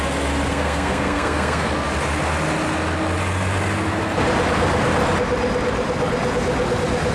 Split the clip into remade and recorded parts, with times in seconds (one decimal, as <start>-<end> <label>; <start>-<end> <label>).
0.0-0.5 recorded; 0.5-1.7 remade; 1.7-7.1 recorded